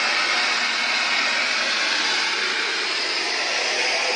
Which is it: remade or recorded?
recorded